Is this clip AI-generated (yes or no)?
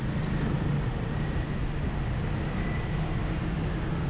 no